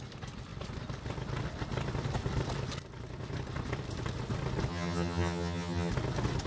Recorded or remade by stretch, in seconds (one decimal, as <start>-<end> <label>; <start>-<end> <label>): 0.0-4.7 recorded; 4.7-5.9 remade; 5.9-6.5 recorded